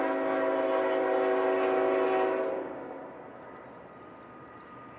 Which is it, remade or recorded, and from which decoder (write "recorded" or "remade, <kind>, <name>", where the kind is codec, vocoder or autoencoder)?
recorded